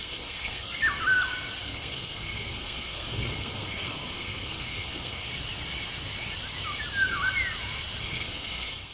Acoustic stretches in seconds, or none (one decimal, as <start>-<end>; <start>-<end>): 0.8-1.6; 5.3-8.0